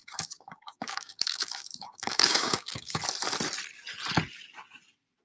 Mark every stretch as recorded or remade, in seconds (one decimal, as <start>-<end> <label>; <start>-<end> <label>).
0.0-3.0 remade; 3.0-5.2 recorded